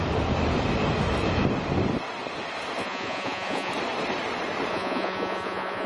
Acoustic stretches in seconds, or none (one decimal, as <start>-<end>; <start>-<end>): 0.0-2.8; 3.7-4.7